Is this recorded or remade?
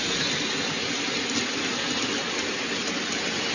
recorded